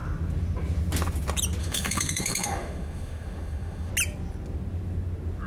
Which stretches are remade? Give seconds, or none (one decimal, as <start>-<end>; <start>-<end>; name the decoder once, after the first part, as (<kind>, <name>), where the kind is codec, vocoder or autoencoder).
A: 1.6-3.9 (autoencoder, DAC-VAE)